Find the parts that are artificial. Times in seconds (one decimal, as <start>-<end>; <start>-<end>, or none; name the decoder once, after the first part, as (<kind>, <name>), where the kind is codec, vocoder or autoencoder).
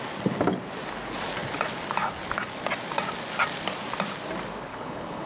4.7-5.3 (codec, HILCodec)